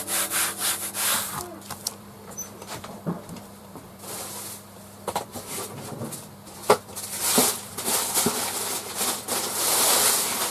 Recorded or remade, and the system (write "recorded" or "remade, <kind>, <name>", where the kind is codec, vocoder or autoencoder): remade, vocoder, BigVGAN v2